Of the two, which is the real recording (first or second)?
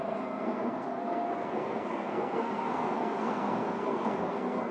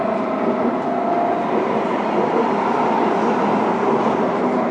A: second